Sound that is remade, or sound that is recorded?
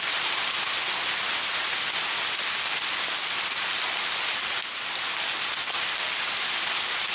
recorded